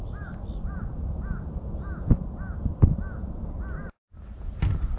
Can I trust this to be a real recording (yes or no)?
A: yes